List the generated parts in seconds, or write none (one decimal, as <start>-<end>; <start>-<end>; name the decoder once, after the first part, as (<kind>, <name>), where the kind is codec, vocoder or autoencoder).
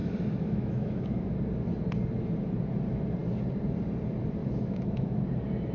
0.0-1.3 (autoencoder, DAC-VAE); 4.4-5.2